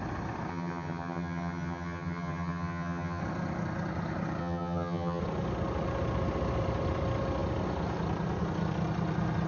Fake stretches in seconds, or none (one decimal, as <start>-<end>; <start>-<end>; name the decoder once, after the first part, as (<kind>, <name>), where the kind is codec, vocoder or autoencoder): 0.5-3.2 (vocoder, HiFi-GAN); 4.4-5.2

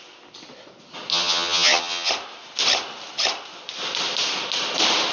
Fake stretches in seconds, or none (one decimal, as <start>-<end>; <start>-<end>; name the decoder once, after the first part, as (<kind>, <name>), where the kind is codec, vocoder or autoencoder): 1.1-2.1 (vocoder, HiFi-GAN)

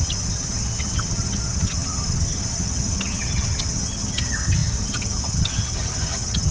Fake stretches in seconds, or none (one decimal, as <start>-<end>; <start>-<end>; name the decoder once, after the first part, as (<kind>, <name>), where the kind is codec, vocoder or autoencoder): 0.0-6.5 (vocoder, HiFi-GAN)

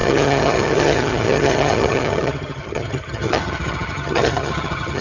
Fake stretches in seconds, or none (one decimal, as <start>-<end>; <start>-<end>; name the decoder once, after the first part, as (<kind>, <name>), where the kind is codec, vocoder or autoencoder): 0.0-5.0 (vocoder, HiFi-GAN)

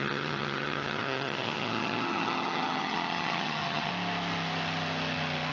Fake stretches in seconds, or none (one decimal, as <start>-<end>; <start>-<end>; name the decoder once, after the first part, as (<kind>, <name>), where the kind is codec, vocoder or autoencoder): 0.0-3.9 (vocoder, HiFi-GAN)

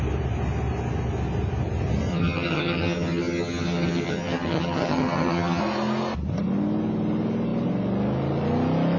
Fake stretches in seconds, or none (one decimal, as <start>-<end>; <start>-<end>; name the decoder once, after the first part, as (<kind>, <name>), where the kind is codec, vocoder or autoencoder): 2.1-5.6 (vocoder, HiFi-GAN)